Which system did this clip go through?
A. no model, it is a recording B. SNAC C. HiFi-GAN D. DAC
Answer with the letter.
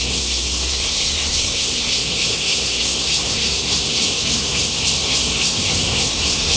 B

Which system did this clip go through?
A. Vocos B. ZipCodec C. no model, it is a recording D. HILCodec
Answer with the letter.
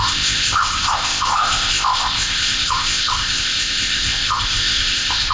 B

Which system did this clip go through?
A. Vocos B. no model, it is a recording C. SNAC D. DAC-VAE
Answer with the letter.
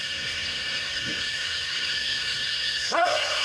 C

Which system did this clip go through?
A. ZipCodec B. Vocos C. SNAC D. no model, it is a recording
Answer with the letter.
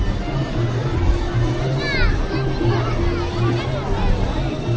D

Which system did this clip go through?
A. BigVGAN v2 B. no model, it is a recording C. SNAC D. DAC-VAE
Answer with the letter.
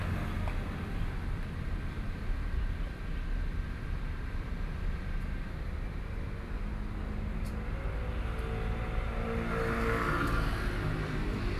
B